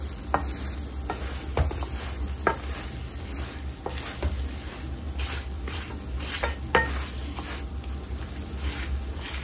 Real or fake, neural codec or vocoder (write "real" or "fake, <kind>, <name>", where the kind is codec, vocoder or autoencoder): real